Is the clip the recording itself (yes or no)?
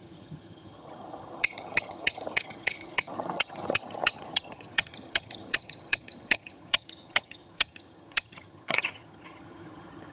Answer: no